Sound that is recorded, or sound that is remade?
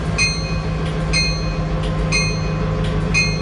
recorded